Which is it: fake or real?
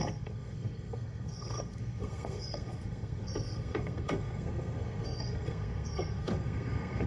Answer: fake